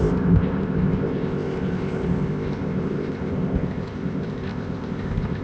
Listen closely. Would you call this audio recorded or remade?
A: remade